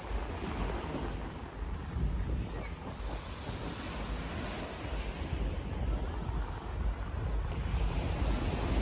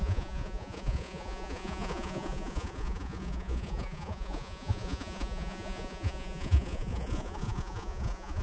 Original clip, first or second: first